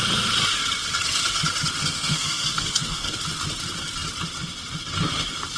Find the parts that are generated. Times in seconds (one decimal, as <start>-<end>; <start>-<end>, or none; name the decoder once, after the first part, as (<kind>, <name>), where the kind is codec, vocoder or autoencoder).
1.8-3.2 (codec, SNAC)